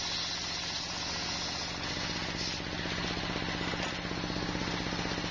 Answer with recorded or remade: recorded